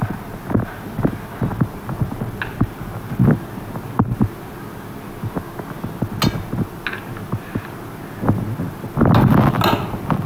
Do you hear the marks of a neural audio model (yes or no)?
no